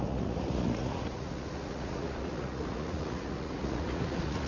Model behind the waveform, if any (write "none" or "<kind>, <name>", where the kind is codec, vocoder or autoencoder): vocoder, Vocos